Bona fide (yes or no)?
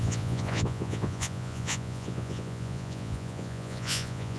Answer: no